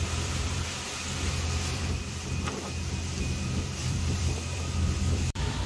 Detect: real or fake fake